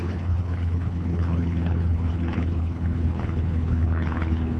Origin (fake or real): fake